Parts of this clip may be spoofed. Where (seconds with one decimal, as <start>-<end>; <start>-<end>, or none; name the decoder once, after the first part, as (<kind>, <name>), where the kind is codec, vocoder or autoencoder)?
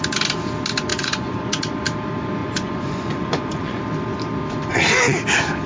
0.9-1.6 (vocoder, Vocos); 2.4-3.8